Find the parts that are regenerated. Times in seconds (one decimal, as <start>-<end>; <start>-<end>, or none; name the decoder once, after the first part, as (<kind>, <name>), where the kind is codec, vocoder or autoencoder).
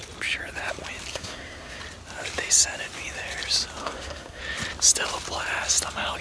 1.1-1.8 (codec, SNAC); 3.8-4.4